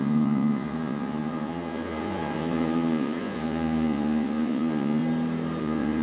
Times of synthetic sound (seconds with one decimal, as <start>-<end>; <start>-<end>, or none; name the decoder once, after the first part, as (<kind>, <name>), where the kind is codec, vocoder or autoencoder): 0.0-5.0 (vocoder, Vocos); 5.6-6.0